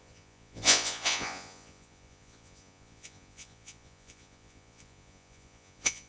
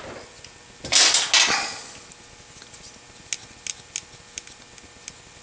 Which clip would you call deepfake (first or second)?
first